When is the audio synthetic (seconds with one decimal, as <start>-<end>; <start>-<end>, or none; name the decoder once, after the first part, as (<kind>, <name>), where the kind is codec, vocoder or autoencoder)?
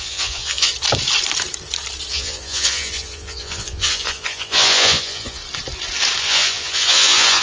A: 0.0-0.7 (vocoder, Vocos); 2.1-5.4; 6.2-7.4